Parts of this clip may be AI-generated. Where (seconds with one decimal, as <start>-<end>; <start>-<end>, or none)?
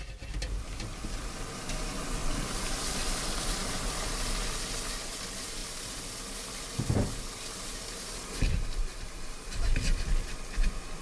none